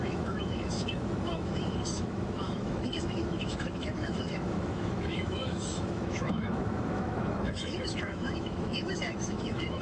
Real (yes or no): no